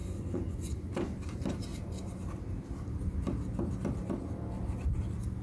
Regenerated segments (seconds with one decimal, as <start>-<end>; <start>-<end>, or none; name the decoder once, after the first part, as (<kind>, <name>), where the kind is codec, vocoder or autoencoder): 0.0-0.7 (vocoder, Vocos)

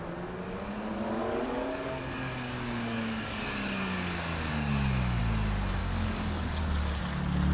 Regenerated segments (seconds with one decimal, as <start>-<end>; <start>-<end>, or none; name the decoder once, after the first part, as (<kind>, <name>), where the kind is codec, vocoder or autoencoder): 1.2-5.2 (codec, DAC); 5.8-7.0

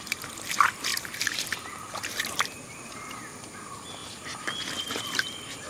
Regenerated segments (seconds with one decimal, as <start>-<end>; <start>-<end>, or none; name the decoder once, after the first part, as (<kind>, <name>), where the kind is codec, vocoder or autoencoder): 0.9-2.6 (vocoder, BigVGAN v2)

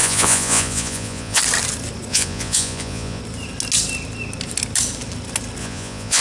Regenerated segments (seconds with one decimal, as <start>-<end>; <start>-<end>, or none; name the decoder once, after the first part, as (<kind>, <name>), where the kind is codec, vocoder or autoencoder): 0.0-1.4 (vocoder, Vocos); 2.1-3.2; 5.6-6.2